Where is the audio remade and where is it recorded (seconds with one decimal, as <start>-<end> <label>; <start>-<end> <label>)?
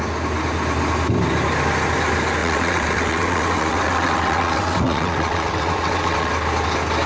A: 0.0-2.4 recorded; 2.4-6.3 remade; 6.3-7.1 recorded